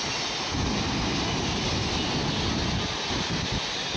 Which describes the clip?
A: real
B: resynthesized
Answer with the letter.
B